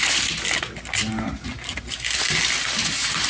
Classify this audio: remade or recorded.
recorded